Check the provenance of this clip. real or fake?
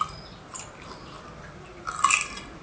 real